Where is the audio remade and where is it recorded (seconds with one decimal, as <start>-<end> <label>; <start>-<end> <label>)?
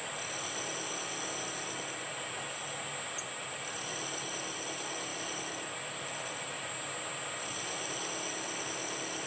0.0-3.4 recorded; 3.4-4.0 remade; 4.0-5.1 recorded; 5.1-6.7 remade; 6.7-9.3 recorded